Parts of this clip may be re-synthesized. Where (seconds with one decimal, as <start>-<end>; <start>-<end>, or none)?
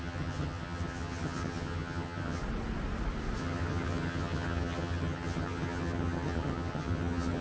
0.0-2.4; 3.4-7.4